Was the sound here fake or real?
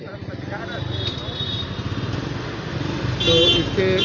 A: real